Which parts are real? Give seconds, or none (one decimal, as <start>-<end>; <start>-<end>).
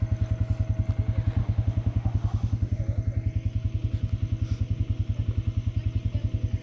0.0-1.4; 2.8-6.6